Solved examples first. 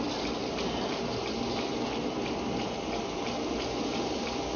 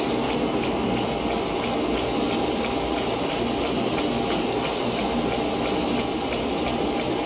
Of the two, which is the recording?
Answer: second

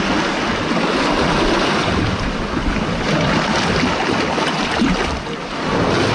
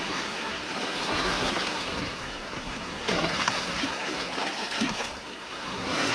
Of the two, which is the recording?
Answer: first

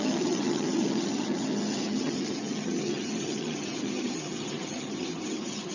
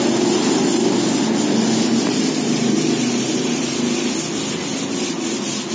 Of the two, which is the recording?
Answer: second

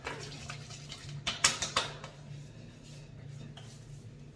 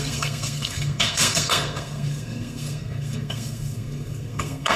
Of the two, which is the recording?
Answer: first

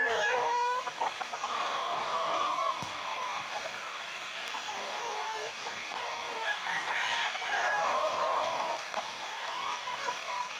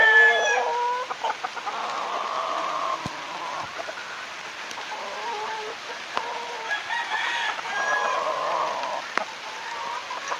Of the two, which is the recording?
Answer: second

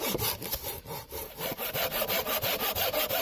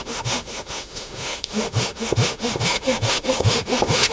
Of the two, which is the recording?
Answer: first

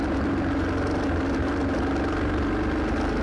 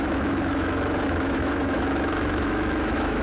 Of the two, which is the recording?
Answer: first